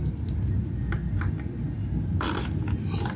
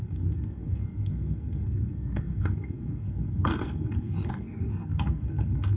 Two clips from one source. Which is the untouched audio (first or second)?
first